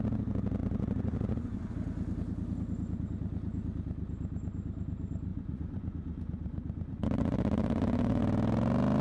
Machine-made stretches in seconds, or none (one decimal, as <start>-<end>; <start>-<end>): 0.6-1.7; 5.3-8.2